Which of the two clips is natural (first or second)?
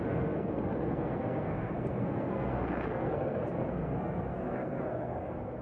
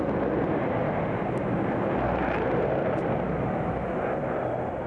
second